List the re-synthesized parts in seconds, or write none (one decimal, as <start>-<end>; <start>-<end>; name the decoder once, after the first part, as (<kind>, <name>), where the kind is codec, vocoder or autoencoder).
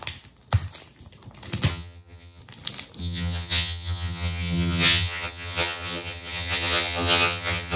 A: 1.7-2.4 (vocoder, HiFi-GAN); 3.0-7.8